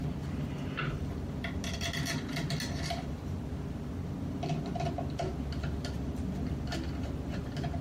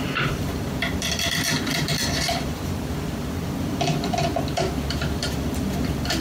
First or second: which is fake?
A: second